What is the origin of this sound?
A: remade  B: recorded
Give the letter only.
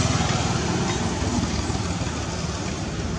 B